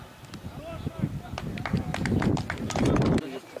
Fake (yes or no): yes